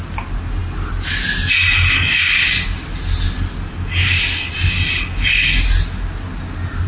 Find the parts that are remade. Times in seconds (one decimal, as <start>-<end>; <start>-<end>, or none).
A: none